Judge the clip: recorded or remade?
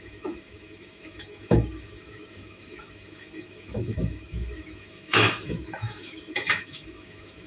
remade